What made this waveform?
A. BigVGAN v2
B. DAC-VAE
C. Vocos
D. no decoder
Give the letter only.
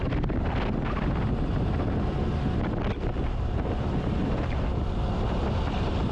D